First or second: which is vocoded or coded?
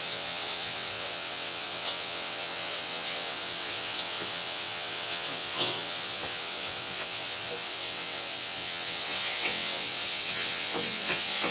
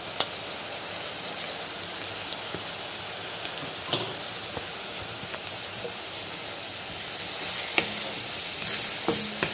first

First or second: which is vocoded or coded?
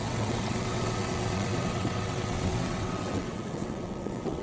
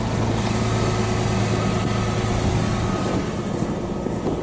first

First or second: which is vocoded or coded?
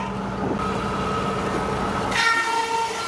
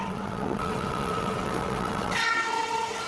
second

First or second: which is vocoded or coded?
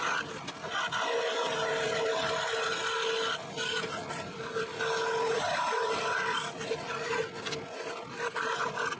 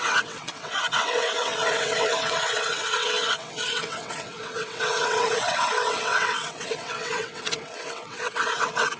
second